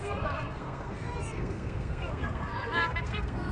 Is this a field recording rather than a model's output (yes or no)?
no